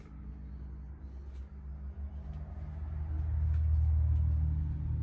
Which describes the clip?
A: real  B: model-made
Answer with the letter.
A